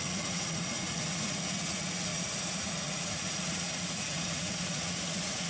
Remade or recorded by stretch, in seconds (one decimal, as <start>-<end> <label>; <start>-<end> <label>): 0.0-5.5 remade